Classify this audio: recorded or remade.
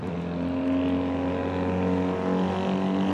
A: recorded